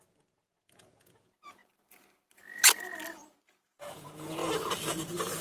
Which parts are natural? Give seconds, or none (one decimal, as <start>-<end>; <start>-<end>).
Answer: 1.6-3.5; 4.4-4.9